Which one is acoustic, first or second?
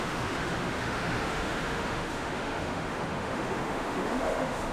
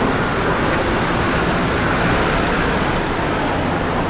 second